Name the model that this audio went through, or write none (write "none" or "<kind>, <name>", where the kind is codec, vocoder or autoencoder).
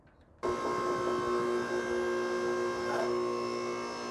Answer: none